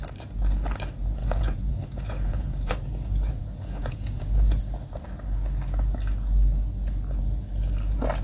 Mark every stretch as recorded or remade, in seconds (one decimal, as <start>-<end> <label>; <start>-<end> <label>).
0.0-1.2 recorded; 1.2-4.6 remade; 4.6-8.2 recorded